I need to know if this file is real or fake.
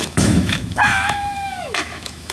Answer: fake